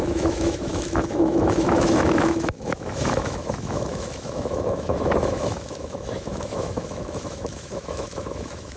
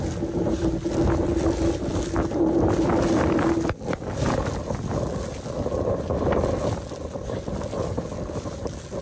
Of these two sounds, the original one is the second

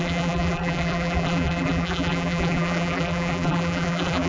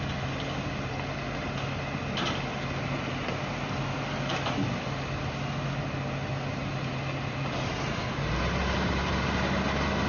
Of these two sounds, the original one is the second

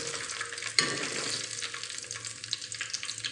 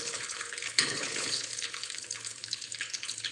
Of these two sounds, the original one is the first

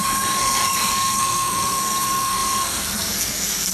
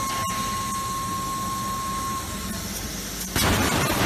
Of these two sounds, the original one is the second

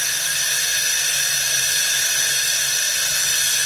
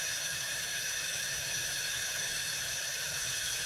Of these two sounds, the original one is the first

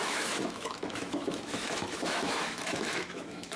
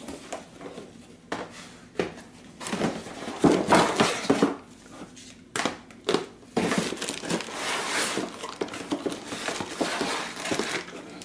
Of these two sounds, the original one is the second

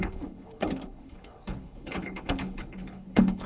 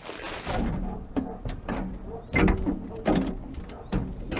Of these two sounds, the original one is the second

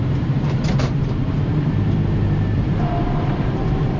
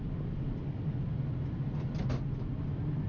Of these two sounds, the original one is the second